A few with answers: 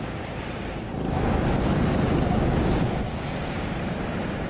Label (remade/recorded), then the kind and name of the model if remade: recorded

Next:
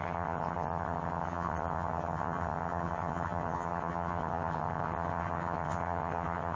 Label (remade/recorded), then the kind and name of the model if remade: remade, vocoder, HiFi-GAN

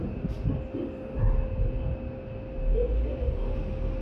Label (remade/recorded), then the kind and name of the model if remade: recorded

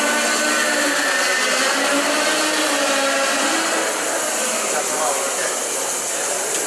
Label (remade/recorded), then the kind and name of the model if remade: recorded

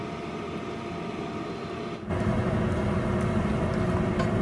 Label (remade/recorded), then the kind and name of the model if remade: recorded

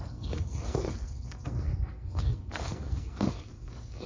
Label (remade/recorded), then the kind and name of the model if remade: remade, codec, SNAC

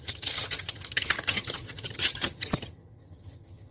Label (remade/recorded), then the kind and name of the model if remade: remade, vocoder, HiFi-GAN